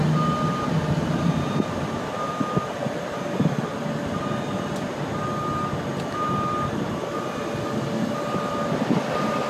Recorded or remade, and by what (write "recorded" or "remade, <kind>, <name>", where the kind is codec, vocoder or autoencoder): recorded